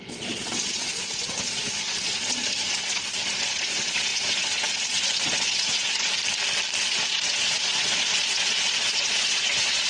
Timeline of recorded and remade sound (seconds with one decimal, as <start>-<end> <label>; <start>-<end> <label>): 0.0-6.2 remade; 6.2-6.8 recorded; 6.8-9.9 remade

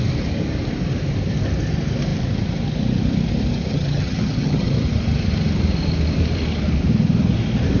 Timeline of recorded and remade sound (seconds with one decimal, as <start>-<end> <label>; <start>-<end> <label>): 0.0-3.7 recorded; 3.7-4.7 remade; 4.7-7.8 recorded

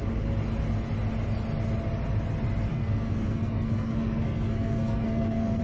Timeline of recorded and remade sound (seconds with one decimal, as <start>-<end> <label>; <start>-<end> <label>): 0.0-2.7 recorded; 2.7-5.6 remade

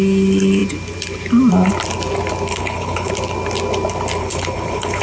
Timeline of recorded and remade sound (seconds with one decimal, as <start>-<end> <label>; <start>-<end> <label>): 0.0-2.5 recorded; 2.5-3.1 remade; 3.1-4.2 recorded; 4.2-5.0 remade

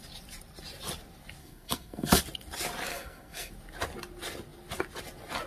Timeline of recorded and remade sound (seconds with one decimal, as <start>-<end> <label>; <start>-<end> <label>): 0.0-1.4 recorded; 1.4-2.2 remade; 2.2-2.9 recorded; 2.9-3.5 remade; 3.5-5.5 recorded

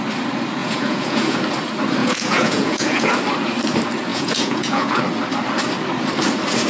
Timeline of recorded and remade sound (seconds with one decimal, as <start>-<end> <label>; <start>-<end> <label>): 0.0-0.6 recorded; 0.6-1.4 remade; 1.4-2.0 recorded; 2.0-3.1 remade; 3.1-4.1 recorded; 4.1-5.0 remade; 5.0-6.7 recorded